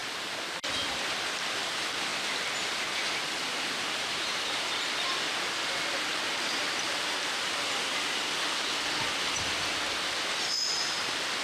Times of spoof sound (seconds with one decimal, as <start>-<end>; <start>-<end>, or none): none